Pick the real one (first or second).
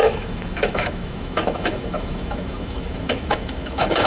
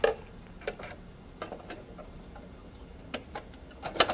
second